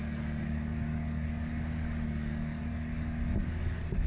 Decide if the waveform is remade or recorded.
remade